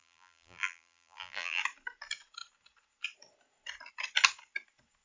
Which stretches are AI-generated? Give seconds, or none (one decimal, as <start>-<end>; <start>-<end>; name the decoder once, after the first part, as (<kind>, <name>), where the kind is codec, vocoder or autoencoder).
0.0-1.6 (vocoder, BigVGAN v2)